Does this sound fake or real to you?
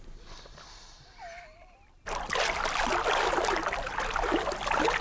real